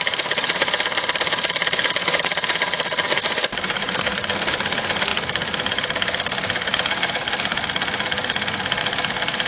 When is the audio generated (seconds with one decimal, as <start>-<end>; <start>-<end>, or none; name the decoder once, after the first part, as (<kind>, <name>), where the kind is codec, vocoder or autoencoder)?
3.2-4.1 (vocoder, BigVGAN v2)